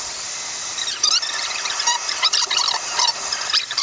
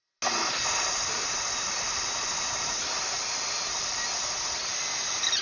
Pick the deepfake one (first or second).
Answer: first